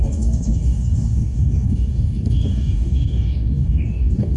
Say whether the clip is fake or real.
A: fake